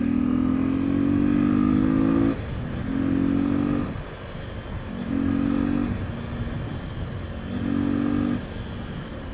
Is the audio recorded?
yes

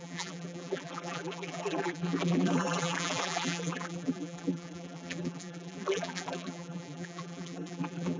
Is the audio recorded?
no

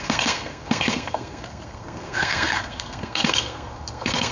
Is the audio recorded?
no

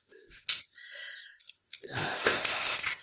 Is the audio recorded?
no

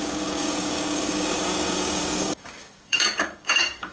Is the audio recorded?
no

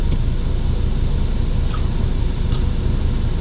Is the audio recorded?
yes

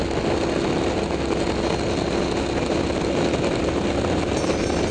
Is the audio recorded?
yes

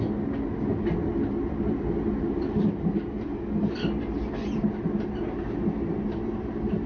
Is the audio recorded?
yes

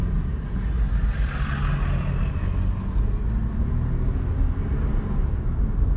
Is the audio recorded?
yes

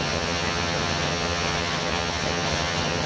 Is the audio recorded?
no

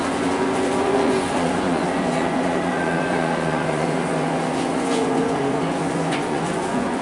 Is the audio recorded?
no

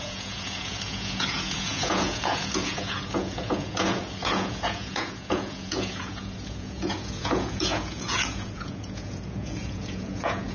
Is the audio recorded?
no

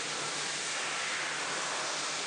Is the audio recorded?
yes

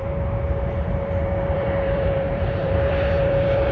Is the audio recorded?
no